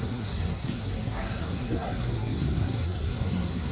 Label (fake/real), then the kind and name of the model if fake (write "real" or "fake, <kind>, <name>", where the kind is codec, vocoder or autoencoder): fake, codec, SNAC